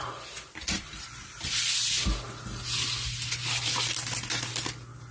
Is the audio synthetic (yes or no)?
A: no